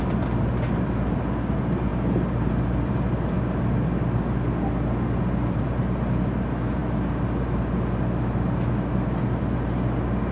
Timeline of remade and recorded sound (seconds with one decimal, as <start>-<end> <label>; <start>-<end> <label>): 0.0-10.3 recorded